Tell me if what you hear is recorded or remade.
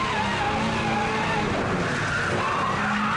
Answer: recorded